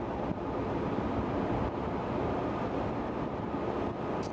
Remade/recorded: recorded